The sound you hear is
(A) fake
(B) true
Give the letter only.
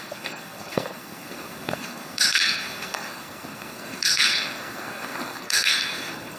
A